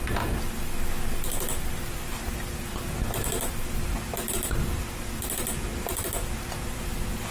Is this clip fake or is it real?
real